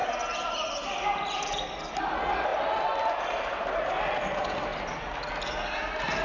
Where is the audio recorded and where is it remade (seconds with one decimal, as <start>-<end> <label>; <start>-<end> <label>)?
0.0-2.5 recorded; 2.5-3.3 remade; 3.3-6.2 recorded